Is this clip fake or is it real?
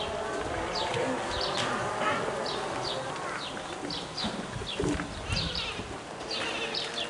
real